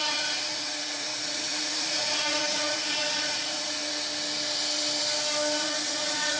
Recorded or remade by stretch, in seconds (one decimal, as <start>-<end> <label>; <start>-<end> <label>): 0.0-3.8 remade; 3.8-5.6 recorded; 5.6-6.4 remade